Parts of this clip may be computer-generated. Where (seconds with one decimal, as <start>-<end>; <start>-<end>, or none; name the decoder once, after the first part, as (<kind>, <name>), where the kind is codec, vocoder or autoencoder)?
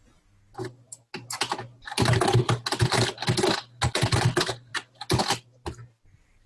none